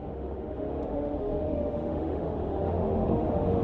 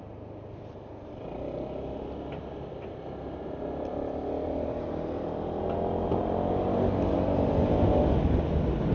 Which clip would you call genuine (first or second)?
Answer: second